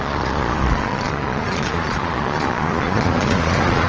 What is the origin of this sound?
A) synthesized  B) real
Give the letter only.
A